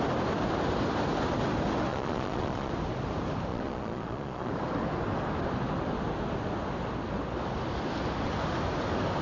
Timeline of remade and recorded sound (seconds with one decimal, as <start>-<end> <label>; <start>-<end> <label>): 0.0-1.9 recorded; 1.9-2.7 remade; 2.7-3.5 recorded; 3.5-4.5 remade; 4.5-9.2 recorded